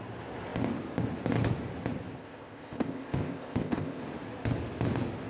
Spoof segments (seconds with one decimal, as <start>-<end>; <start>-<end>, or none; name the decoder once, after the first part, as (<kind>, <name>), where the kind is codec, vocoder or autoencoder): 2.2-4.0 (codec, ZipCodec)